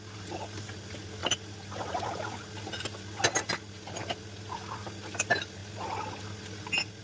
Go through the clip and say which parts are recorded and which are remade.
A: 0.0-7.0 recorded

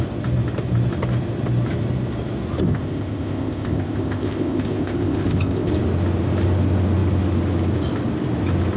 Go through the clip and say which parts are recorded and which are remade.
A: 0.0-2.6 recorded; 2.6-5.7 remade; 5.7-8.8 recorded

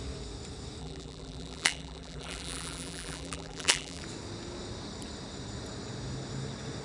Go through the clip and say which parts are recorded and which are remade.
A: 0.0-0.8 recorded; 0.8-4.0 remade; 4.0-6.8 recorded